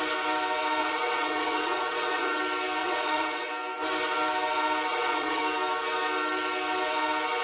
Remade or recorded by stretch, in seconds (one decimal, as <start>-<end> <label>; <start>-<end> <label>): 0.0-0.8 recorded; 0.8-2.4 remade; 2.4-2.8 recorded; 2.8-3.5 remade; 3.5-4.9 recorded; 4.9-5.4 remade; 5.4-7.4 recorded